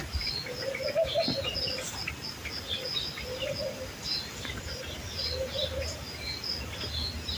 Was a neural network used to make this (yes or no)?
no